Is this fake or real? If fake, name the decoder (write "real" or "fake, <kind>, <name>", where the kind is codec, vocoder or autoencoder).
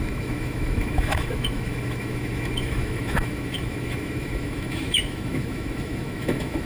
fake, autoencoder, DAC-VAE